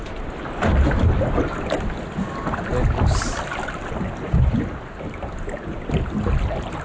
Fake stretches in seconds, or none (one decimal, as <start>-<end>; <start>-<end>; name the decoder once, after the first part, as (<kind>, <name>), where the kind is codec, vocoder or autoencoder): none